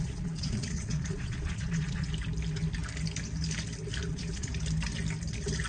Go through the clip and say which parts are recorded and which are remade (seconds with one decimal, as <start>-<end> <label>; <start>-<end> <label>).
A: 0.0-2.1 remade; 2.1-4.1 recorded; 4.1-4.5 remade; 4.5-5.7 recorded